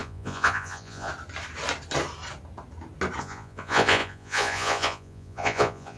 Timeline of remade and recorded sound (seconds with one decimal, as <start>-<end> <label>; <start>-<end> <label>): 0.0-1.1 remade; 1.1-3.2 recorded; 3.2-6.0 remade